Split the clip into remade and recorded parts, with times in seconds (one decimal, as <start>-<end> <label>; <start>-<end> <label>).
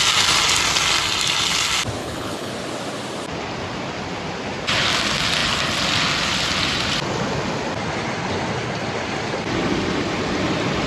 0.0-2.0 recorded; 2.0-2.5 remade; 2.5-10.9 recorded